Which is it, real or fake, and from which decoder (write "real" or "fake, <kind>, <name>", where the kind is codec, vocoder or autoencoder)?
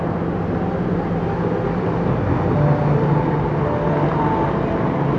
real